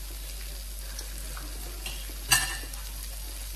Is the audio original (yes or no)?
yes